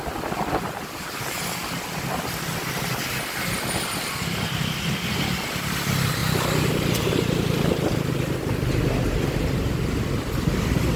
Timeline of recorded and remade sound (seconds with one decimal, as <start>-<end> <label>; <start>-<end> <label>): 0.0-11.0 recorded